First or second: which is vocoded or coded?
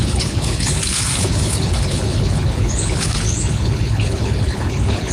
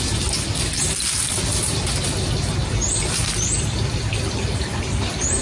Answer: first